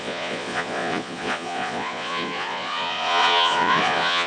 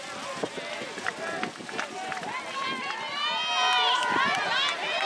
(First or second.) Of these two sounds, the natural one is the second